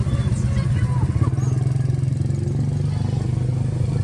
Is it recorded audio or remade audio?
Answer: recorded